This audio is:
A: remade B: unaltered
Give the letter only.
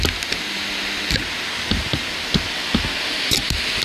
B